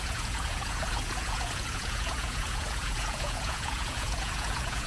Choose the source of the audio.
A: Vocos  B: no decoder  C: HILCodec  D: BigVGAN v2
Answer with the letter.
A